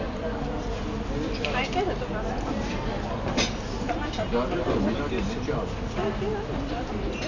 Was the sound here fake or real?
real